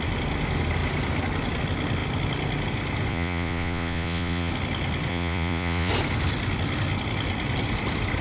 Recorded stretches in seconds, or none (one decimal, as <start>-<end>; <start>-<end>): 0.0-3.1; 4.5-5.1; 5.9-8.2